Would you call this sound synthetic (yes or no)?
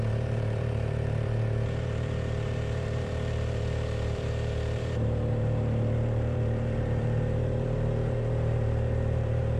yes